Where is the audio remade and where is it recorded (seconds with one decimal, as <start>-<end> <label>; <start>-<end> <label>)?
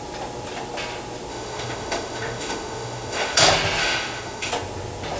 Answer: 0.0-1.3 recorded; 1.3-3.4 remade; 3.4-3.8 recorded; 3.8-4.5 remade; 4.5-5.2 recorded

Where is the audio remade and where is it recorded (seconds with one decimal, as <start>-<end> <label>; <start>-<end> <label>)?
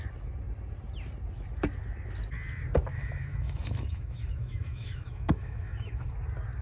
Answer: 0.0-2.9 recorded; 2.9-6.1 remade; 6.1-6.6 recorded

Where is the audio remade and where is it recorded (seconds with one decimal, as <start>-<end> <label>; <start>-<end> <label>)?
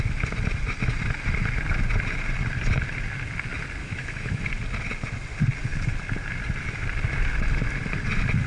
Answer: 0.0-3.8 recorded; 3.8-4.4 remade; 4.4-8.5 recorded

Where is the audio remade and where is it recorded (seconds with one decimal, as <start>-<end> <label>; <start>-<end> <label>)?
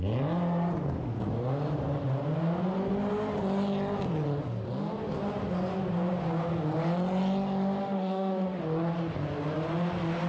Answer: 0.0-7.8 recorded; 7.8-8.6 remade; 8.6-10.3 recorded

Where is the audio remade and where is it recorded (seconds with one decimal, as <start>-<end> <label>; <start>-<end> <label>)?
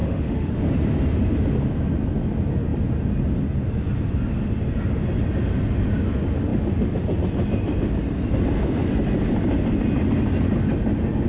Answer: 0.0-0.5 remade; 0.5-11.3 recorded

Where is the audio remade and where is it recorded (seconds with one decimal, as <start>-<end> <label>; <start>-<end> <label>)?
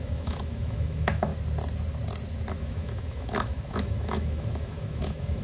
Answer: 0.0-1.3 remade; 1.3-2.5 recorded; 2.5-5.4 remade